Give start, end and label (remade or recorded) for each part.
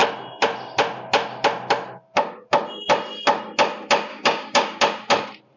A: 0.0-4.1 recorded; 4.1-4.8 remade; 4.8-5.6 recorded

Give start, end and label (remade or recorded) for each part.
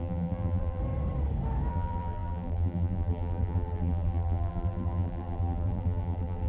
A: 0.0-0.8 remade; 0.8-1.7 recorded; 1.7-6.5 remade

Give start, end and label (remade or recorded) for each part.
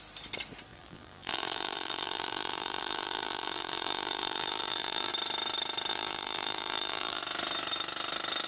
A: 0.0-0.7 recorded; 0.7-5.1 remade; 5.1-5.9 recorded; 5.9-7.2 remade; 7.2-8.5 recorded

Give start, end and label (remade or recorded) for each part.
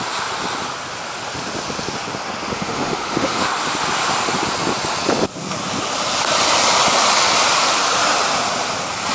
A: 0.0-2.5 recorded; 2.5-3.4 remade; 3.4-9.1 recorded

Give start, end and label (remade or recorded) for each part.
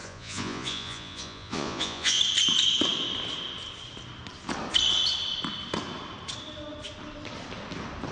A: 0.0-2.2 remade; 2.2-8.1 recorded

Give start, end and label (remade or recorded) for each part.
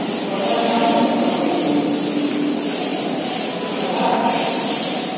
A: 0.0-5.2 recorded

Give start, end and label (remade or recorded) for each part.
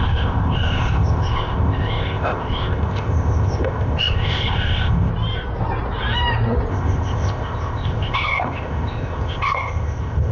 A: 0.0-5.1 remade; 5.1-6.7 recorded; 6.7-10.3 remade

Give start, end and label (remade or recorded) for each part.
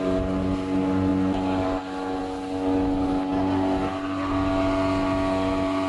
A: 0.0-5.9 recorded